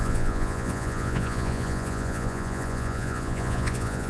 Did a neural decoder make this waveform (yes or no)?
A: yes